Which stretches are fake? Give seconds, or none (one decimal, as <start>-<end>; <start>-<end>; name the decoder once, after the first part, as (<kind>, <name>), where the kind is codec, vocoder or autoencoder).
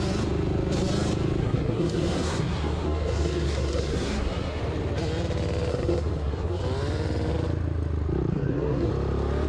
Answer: 1.4-4.6 (codec, SNAC); 5.7-6.6; 8.3-8.9